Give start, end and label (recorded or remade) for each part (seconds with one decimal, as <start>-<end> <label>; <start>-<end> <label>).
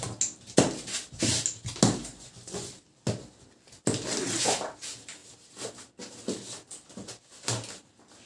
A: 0.0-2.1 recorded; 2.1-2.7 remade; 2.7-8.3 recorded